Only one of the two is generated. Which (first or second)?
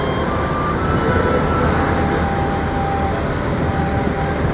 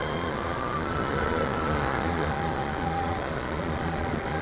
second